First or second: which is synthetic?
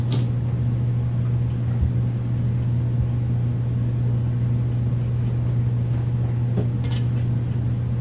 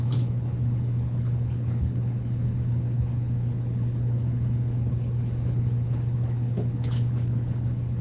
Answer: second